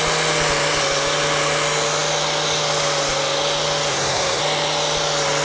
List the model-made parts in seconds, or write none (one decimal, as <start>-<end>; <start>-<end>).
3.9-4.4